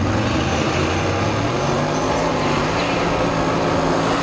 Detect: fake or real real